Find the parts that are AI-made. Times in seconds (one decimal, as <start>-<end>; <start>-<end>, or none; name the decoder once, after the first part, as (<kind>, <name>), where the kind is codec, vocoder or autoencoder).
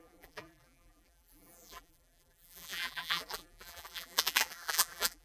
0.0-5.2 (vocoder, BigVGAN v2)